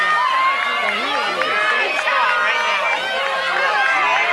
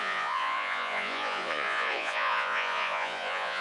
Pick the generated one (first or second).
second